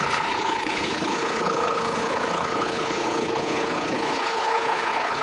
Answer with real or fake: fake